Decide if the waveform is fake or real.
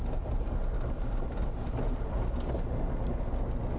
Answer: real